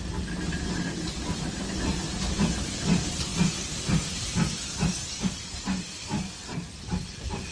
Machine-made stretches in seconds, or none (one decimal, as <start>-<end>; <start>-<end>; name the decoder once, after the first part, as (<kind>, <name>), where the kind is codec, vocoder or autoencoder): none